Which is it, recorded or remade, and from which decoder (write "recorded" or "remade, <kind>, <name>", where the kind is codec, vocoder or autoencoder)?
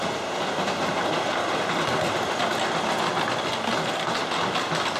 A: recorded